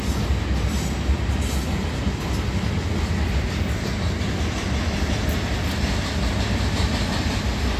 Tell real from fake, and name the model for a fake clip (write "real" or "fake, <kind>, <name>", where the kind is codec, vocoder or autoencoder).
real